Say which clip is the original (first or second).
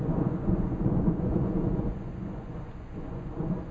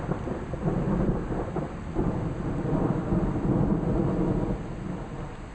second